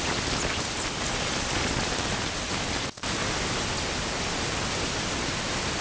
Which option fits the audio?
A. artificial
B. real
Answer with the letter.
B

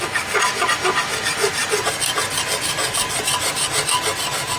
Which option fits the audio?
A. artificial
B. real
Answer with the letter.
B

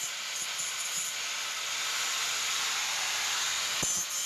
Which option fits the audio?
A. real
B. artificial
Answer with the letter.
A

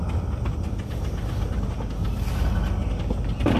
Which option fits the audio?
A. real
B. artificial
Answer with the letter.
A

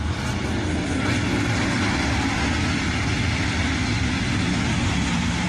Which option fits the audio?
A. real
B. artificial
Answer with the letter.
A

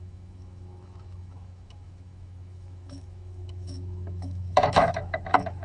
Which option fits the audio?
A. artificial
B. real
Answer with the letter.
A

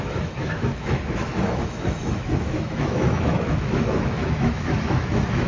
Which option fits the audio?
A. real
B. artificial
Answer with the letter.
B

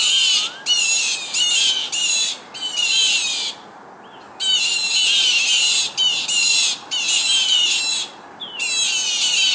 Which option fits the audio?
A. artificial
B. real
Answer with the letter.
B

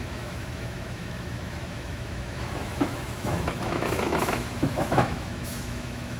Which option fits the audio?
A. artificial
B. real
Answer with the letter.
A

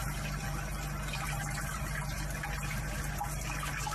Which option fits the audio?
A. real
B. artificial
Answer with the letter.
A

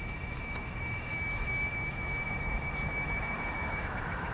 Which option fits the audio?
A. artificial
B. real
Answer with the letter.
A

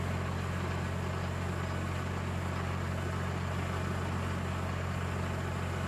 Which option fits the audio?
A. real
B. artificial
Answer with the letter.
A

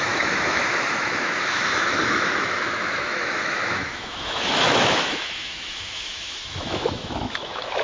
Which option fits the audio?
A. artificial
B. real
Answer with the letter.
A